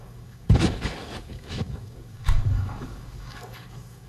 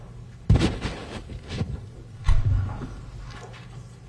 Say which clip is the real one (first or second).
second